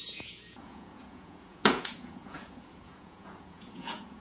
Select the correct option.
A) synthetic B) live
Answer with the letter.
A